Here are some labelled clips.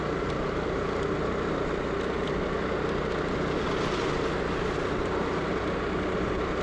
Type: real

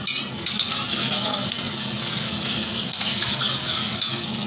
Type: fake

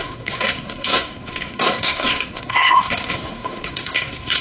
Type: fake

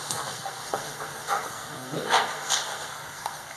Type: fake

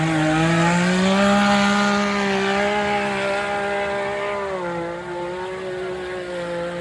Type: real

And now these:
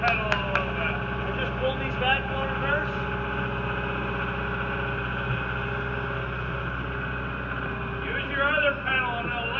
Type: real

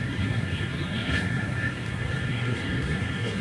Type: fake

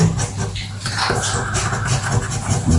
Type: real